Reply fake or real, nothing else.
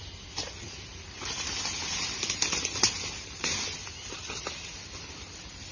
real